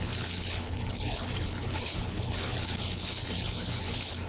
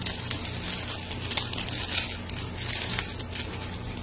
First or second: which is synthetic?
first